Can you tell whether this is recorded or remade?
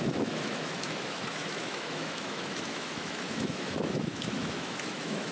remade